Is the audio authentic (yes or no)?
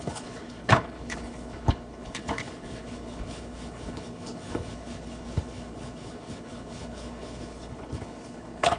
no